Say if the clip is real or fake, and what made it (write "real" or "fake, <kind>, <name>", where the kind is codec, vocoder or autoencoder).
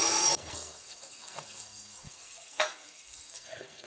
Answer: fake, codec, SNAC